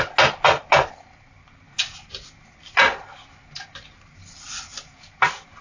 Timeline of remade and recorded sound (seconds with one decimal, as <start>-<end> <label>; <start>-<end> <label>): 0.0-5.6 recorded